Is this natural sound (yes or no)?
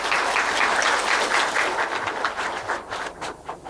yes